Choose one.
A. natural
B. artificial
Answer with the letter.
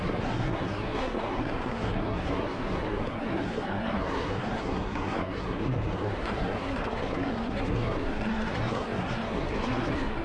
B